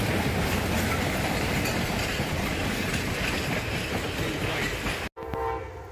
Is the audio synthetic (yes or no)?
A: no